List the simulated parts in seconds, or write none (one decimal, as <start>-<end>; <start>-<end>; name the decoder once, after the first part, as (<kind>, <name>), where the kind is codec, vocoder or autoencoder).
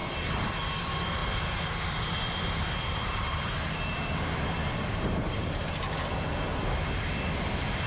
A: 0.0-0.5 (vocoder, BigVGAN v2); 1.2-5.9